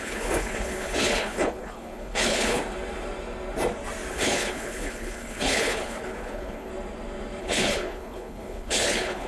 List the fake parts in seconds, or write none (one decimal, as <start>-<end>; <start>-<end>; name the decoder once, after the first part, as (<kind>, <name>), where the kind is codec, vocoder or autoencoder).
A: 0.0-2.6 (codec, HILCodec); 4.1-6.7; 7.4-9.3